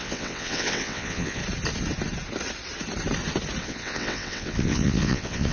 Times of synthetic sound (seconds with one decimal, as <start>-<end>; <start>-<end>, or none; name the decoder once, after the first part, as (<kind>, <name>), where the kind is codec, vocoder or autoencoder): 0.0-1.4 (vocoder, WaveNeXt); 3.6-5.5